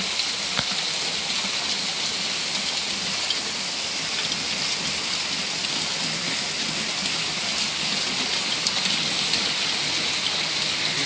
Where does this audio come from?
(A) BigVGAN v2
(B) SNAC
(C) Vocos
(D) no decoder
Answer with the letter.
D